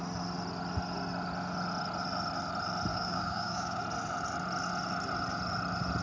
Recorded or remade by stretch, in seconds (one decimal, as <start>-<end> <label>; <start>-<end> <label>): 0.0-2.9 recorded; 2.9-3.8 remade; 3.8-6.0 recorded